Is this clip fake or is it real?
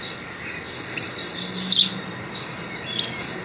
real